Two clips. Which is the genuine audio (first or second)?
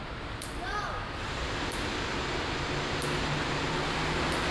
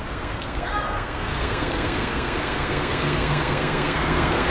first